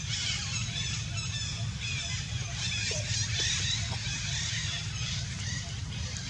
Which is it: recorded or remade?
recorded